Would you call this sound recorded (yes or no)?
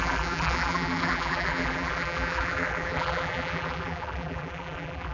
no